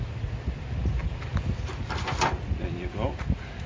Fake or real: real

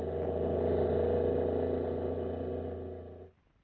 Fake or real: real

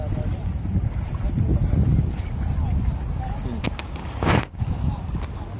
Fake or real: real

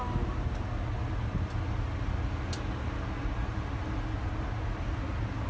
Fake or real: real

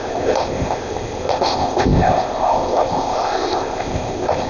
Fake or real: fake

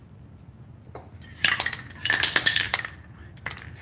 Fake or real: real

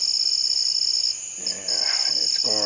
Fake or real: real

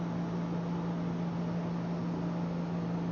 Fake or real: real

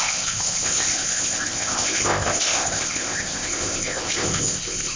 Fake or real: fake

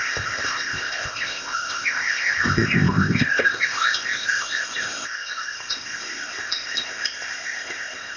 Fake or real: fake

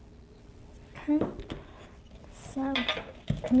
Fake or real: real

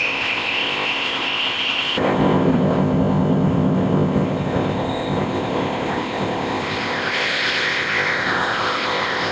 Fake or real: fake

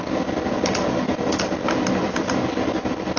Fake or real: real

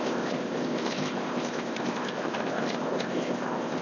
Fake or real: fake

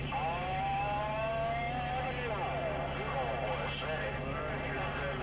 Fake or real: real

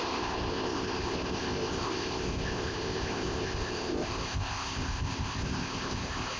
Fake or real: fake